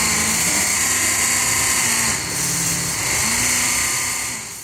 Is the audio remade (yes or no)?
no